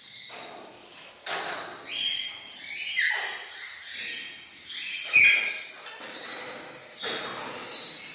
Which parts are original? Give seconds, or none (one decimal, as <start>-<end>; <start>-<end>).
0.0-8.1